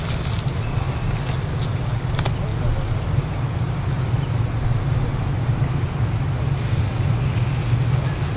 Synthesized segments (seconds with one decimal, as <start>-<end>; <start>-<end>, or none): none